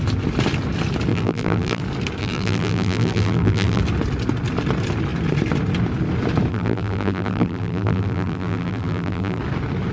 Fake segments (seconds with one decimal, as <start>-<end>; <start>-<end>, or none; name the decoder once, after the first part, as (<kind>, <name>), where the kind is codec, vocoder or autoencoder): 1.1-1.8 (vocoder, BigVGAN v2); 2.2-3.8; 6.5-9.4